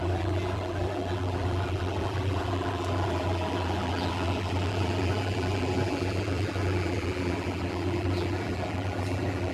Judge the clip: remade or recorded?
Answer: remade